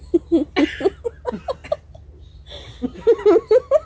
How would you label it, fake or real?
real